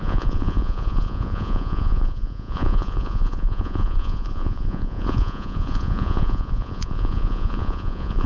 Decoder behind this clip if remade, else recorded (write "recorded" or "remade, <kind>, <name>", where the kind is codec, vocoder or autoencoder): remade, vocoder, Vocos